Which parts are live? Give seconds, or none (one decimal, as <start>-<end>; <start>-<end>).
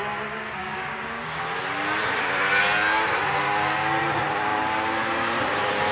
0.0-0.6; 1.4-5.9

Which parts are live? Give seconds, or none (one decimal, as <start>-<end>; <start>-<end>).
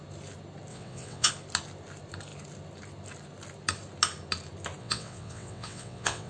0.0-0.7; 1.3-4.8